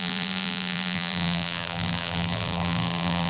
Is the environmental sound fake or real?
fake